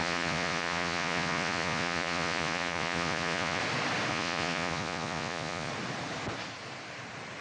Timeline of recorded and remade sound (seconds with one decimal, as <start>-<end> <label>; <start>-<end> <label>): 0.0-3.6 remade; 3.6-4.1 recorded; 4.1-5.7 remade; 5.7-7.4 recorded